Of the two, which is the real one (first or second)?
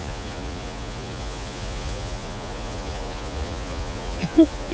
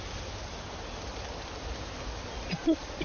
second